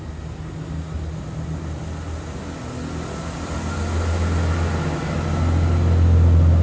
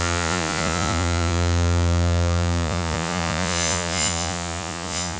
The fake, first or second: second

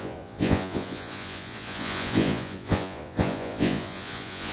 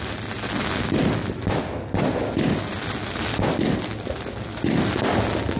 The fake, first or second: first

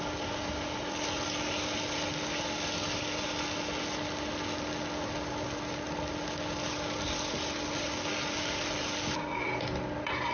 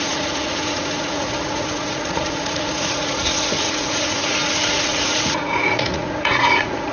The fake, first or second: second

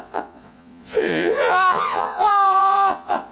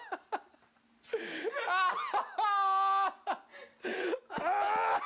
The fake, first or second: first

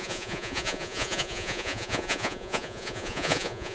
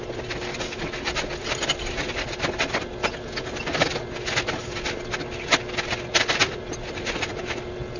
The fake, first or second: first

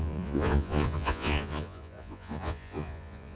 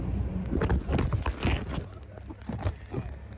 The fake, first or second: first